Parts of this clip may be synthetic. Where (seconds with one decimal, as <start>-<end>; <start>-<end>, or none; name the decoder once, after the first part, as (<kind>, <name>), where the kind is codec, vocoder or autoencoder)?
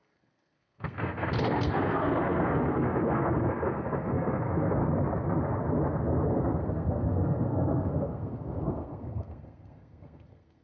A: 0.0-4.8 (codec, SNAC); 6.3-10.6